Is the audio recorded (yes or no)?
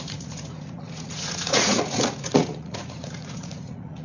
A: no